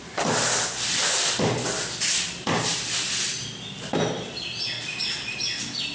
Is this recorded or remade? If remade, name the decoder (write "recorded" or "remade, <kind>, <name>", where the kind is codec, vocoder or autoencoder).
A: recorded